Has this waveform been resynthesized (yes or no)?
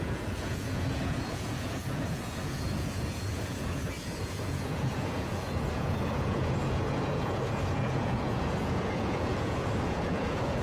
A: yes